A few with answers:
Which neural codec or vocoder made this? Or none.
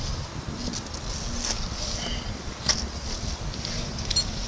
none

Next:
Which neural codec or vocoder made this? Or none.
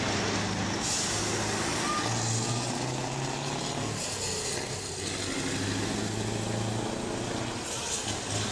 none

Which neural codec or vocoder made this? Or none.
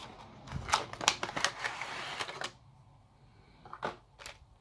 none